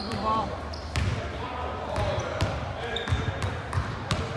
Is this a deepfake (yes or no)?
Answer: yes